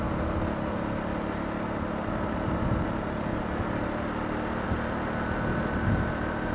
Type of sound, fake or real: real